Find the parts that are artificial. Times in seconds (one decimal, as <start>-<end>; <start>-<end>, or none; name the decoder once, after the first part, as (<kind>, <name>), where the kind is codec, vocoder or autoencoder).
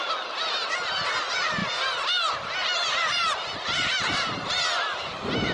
0.0-1.6 (vocoder, BigVGAN v2); 2.9-5.5